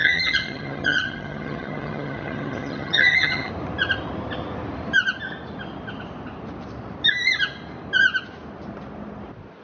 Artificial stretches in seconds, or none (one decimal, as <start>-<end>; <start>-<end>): 0.0-3.5